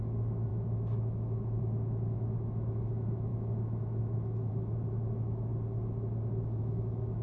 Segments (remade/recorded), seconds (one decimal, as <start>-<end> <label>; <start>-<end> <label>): 0.0-5.5 remade; 5.5-6.6 recorded; 6.6-7.2 remade

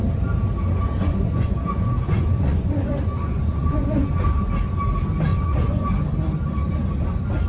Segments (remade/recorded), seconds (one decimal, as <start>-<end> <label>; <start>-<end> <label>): 0.0-0.7 recorded; 0.7-4.2 remade; 4.2-5.3 recorded; 5.3-5.9 remade; 5.9-7.5 recorded

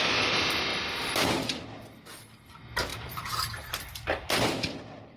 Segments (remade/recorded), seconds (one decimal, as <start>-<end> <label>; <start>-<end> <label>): 0.0-0.7 recorded; 0.7-1.6 remade; 1.6-2.9 recorded; 2.9-3.5 remade; 3.5-5.2 recorded

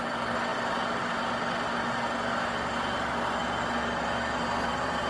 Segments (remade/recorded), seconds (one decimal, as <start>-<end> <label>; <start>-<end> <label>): 0.0-5.1 recorded